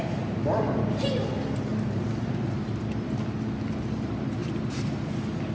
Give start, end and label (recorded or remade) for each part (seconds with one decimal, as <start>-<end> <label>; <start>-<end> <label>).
0.0-1.7 recorded; 1.7-2.7 remade; 2.7-4.4 recorded; 4.4-5.1 remade; 5.1-5.5 recorded

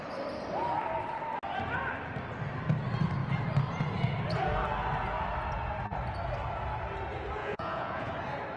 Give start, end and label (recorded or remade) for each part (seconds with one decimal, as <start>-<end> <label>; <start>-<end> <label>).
0.0-7.4 recorded; 7.4-8.1 remade; 8.1-8.6 recorded

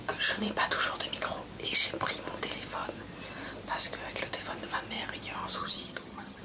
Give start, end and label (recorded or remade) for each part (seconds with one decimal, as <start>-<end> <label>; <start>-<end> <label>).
0.0-5.6 recorded; 5.6-6.4 remade